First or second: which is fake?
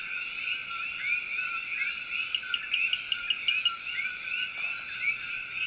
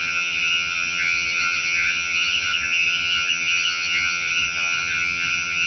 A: second